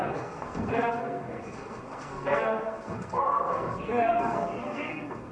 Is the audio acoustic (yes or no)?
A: no